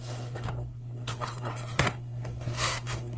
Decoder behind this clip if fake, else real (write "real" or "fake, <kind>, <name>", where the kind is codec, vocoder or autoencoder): fake, codec, SNAC